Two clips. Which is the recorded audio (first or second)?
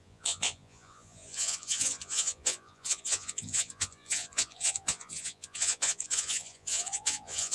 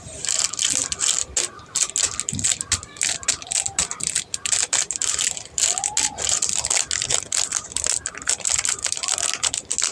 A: second